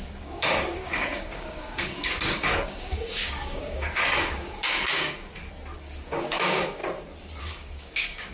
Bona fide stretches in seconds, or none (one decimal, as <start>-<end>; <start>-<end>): 5.3-6.0; 6.8-7.4